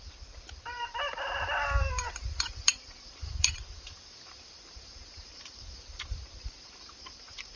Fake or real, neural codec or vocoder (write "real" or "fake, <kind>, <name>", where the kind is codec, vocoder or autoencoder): fake, vocoder, BigVGAN v2